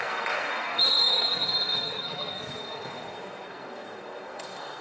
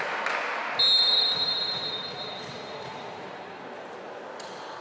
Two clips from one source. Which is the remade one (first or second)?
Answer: first